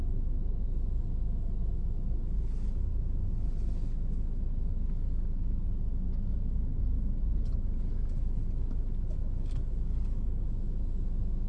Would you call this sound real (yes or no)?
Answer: yes